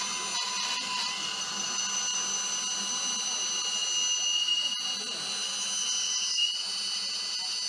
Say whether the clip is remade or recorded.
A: recorded